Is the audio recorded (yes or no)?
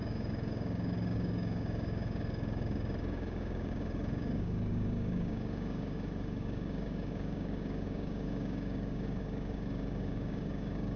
no